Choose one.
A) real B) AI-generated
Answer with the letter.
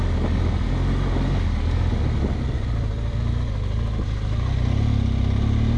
A